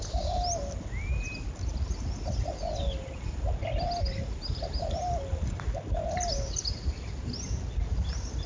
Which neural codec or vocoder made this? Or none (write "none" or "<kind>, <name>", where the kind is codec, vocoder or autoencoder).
none